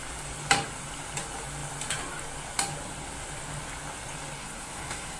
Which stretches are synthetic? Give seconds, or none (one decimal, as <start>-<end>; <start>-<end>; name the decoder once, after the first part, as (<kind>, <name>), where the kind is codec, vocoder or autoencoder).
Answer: 4.4-5.2 (codec, SNAC)